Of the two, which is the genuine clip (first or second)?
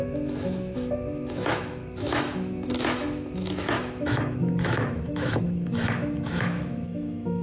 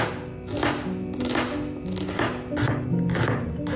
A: second